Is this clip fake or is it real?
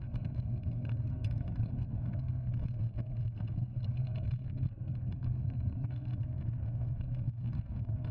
fake